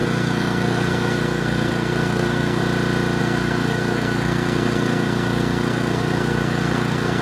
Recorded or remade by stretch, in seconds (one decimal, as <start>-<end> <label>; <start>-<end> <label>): 0.0-2.6 remade; 2.6-3.2 recorded; 3.2-7.2 remade